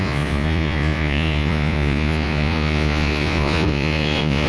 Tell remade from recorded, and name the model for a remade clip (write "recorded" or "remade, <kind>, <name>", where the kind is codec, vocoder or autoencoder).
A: remade, vocoder, Vocos